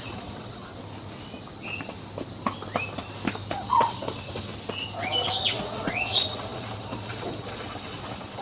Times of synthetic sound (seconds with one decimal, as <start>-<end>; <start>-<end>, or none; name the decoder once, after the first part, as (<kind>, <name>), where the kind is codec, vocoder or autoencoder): 0.0-0.7 (vocoder, WaveNeXt); 3.5-4.5; 5.4-8.4